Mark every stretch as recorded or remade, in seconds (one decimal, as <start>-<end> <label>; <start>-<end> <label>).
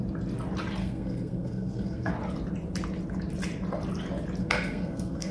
0.0-0.8 recorded; 0.8-2.1 remade; 2.1-4.4 recorded; 4.4-5.3 remade